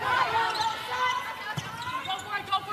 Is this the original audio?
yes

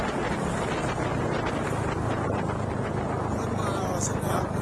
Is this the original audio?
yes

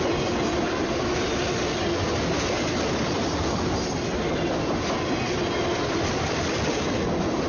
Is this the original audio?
yes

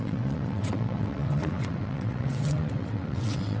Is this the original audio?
no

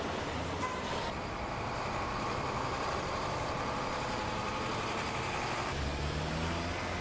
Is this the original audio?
yes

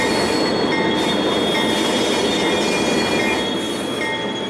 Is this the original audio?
yes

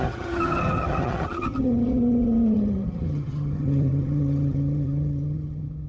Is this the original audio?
no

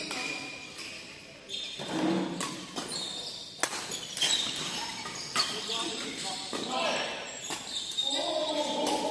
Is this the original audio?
yes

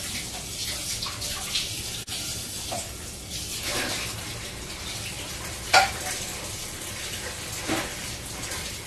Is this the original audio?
yes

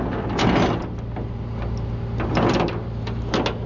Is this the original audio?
yes